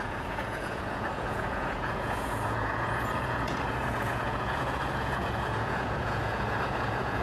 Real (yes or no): no